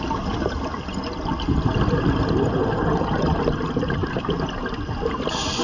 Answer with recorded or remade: recorded